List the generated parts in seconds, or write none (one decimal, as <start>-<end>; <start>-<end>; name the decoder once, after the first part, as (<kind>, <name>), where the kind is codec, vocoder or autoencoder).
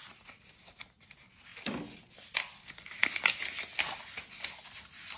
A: 0.0-0.8 (vocoder, BigVGAN v2); 1.5-3.6